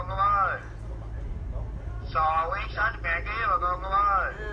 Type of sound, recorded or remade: recorded